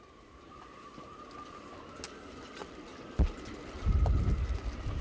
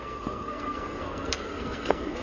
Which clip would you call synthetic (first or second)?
second